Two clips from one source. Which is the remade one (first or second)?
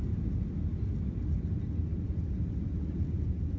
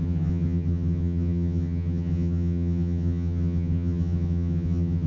second